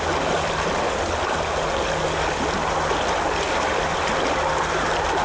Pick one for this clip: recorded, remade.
recorded